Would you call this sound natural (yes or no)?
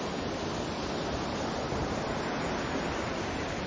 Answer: yes